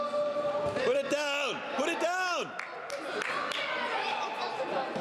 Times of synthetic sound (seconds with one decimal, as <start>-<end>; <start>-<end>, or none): none